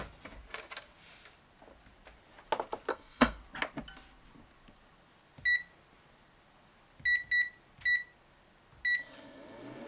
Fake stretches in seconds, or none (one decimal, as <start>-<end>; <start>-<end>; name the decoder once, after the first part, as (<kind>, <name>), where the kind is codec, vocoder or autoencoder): 2.9-3.4 (codec, SNAC)